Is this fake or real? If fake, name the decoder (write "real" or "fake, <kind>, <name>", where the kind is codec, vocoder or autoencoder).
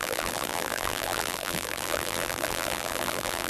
fake, vocoder, BigVGAN v2